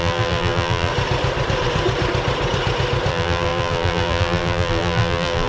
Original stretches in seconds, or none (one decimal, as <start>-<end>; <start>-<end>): 0.9-3.1